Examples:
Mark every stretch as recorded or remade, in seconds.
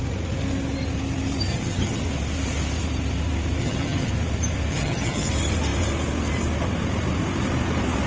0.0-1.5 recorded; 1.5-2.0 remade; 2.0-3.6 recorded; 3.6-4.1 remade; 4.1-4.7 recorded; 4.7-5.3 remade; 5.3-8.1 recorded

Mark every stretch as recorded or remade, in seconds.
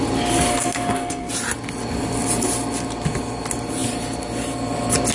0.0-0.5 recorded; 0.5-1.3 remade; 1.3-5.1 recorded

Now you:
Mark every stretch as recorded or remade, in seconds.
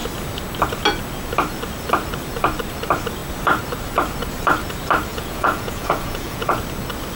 0.0-5.1 recorded; 5.1-6.6 remade; 6.6-7.2 recorded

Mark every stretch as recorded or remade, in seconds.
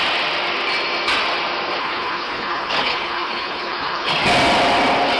0.0-1.8 recorded; 1.8-4.1 remade; 4.1-5.2 recorded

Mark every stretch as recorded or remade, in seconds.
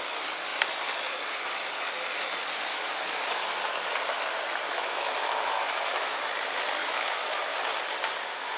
0.0-2.7 recorded; 2.7-3.2 remade; 3.2-4.7 recorded; 4.7-6.2 remade; 6.2-6.8 recorded; 6.8-7.4 remade; 7.4-8.6 recorded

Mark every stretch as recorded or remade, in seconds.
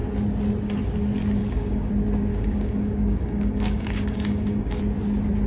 0.0-1.4 recorded; 1.4-1.9 remade; 1.9-2.3 recorded; 2.3-4.8 remade; 4.8-5.5 recorded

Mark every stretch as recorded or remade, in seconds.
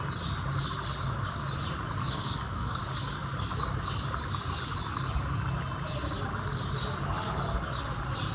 0.0-2.0 recorded; 2.0-2.8 remade; 2.8-8.3 recorded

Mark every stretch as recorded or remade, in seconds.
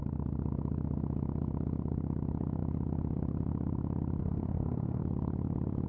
0.0-4.2 recorded; 4.2-5.0 remade; 5.0-5.9 recorded